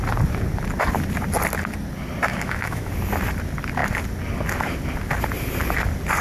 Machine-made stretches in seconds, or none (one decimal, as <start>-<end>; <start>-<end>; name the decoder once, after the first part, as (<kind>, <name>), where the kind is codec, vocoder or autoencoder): 2.3-2.9 (autoencoder, DAC-VAE)